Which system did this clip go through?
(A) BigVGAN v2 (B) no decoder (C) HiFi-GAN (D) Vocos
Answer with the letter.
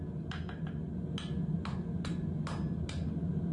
B